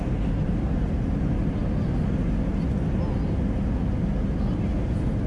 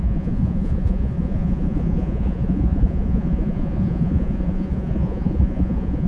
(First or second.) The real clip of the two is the first